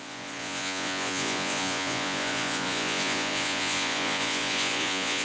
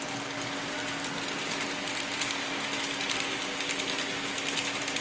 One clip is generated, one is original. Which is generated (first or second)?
first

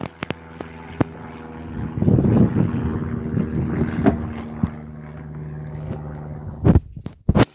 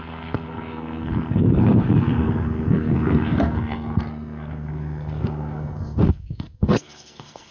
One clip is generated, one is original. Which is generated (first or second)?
second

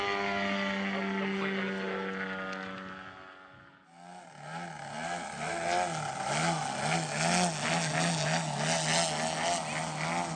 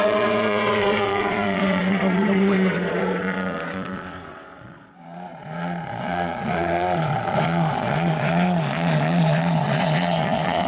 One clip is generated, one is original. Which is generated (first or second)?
second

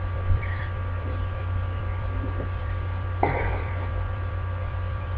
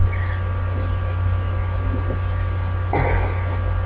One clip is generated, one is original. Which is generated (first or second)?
first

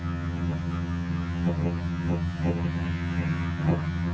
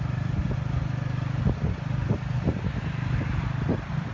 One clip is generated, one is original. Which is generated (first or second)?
first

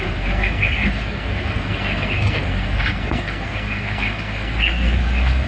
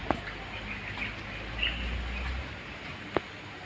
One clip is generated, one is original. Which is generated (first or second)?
first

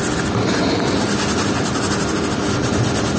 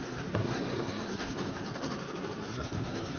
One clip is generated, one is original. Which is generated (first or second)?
second